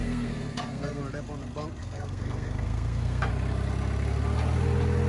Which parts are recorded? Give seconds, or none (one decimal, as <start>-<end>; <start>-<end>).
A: 1.0-1.8; 3.3-5.1